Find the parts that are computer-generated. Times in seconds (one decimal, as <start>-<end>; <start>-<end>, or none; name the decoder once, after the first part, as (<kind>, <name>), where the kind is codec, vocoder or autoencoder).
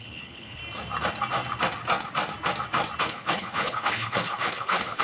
0.0-0.6 (codec, HILCodec); 3.0-5.0